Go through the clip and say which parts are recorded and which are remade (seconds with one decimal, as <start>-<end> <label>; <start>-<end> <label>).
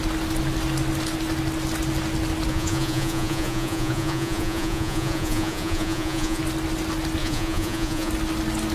0.0-2.5 recorded; 2.5-6.4 remade; 6.4-7.2 recorded; 7.2-8.1 remade; 8.1-8.7 recorded